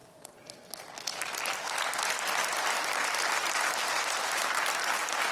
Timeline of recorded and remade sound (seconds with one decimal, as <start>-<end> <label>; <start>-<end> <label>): 0.0-3.4 recorded; 3.4-4.4 remade; 4.4-5.3 recorded